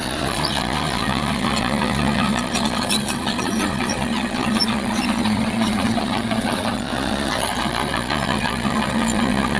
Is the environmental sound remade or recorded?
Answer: remade